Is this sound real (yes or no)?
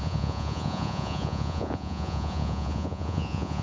no